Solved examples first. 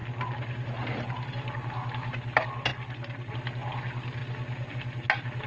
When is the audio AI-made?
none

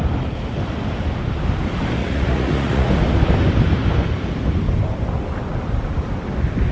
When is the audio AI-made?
2.0-2.9 (vocoder, Vocos)

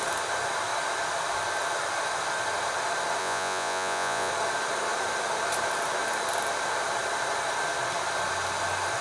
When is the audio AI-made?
3.2-4.3 (vocoder, Vocos)